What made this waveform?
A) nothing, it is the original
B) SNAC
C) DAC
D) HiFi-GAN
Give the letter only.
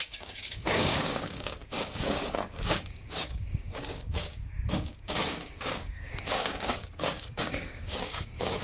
C